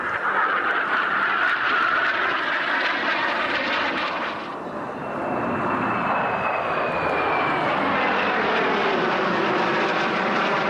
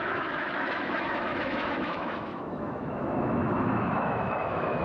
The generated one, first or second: second